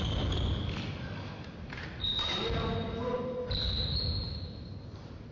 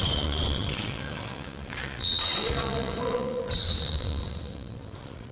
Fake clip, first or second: second